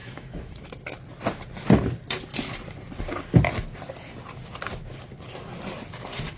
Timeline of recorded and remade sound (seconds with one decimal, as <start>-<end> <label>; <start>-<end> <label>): 0.0-0.7 remade; 0.7-6.4 recorded